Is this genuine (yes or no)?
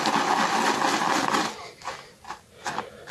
yes